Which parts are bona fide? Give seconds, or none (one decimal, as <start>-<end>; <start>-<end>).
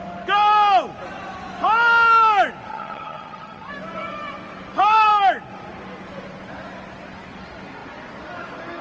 0.0-2.7; 3.7-8.8